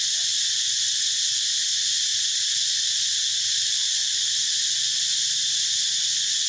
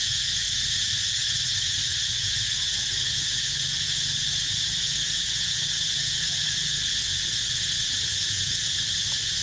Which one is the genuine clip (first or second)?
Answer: first